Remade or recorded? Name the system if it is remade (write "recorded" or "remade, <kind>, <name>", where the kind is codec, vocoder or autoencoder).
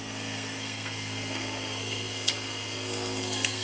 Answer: remade, codec, SNAC